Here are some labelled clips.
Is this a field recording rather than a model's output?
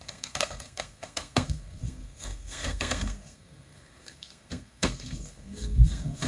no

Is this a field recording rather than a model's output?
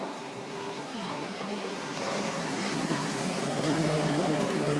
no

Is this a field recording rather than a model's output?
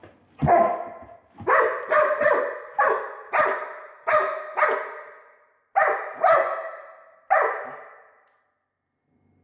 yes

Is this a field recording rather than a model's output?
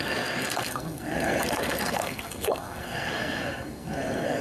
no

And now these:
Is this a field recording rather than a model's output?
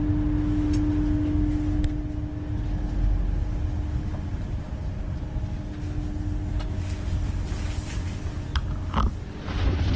yes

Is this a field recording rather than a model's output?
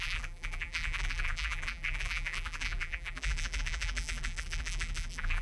no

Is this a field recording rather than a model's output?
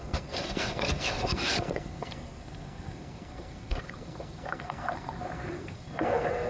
no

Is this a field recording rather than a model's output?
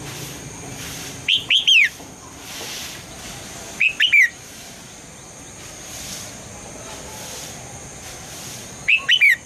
no